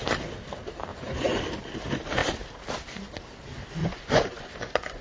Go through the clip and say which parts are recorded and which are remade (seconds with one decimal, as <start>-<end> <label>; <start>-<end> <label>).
0.0-0.9 recorded; 0.9-1.4 remade; 1.4-3.8 recorded; 3.8-5.0 remade